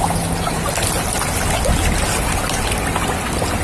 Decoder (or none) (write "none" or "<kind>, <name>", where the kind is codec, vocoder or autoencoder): none